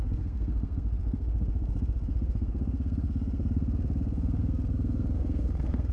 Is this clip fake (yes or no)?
yes